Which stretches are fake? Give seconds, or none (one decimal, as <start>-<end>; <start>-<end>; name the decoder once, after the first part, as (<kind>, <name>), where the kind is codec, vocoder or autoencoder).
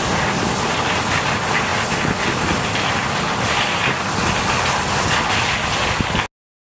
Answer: none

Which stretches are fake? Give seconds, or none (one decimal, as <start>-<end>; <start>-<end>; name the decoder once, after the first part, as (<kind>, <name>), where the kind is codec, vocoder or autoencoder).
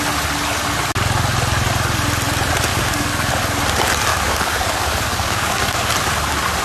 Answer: 2.7-3.3 (codec, DAC); 4.1-5.9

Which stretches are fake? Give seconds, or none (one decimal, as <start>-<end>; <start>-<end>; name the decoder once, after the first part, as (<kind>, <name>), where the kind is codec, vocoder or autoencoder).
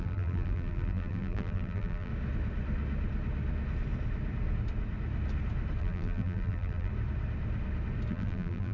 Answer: 0.0-2.1 (vocoder, BigVGAN v2); 5.8-6.9; 8.1-8.7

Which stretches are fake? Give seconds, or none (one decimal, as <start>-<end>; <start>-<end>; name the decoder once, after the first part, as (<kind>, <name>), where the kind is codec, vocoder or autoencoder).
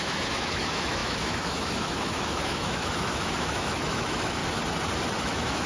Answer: 0.0-4.4 (autoencoder, DAC-VAE); 5.2-5.7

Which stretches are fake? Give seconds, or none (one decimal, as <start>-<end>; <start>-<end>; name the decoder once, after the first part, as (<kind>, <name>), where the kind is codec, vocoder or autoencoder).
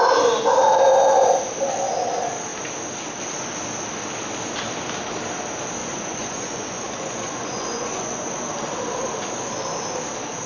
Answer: 5.8-8.3 (vocoder, Vocos)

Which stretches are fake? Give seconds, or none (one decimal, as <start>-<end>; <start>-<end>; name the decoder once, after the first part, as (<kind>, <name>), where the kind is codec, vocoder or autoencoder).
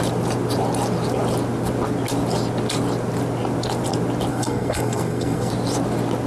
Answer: 4.3-5.5 (codec, SNAC)